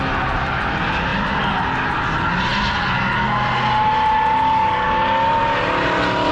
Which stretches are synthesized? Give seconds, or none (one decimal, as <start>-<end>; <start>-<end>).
none